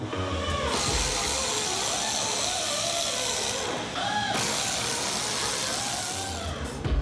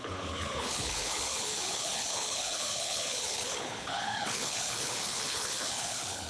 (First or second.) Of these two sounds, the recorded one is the first